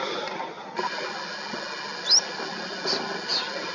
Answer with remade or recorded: recorded